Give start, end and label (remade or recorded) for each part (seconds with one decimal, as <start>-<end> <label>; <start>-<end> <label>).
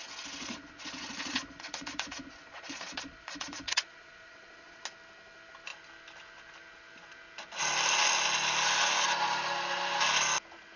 0.0-0.4 recorded; 0.4-4.8 remade; 4.8-10.8 recorded